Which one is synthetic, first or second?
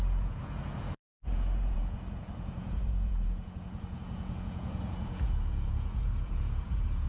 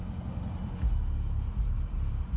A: first